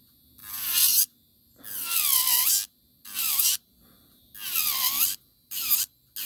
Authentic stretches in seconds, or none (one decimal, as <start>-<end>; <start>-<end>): 0.0-6.3